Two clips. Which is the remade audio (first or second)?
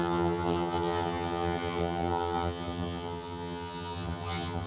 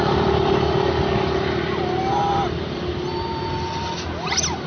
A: first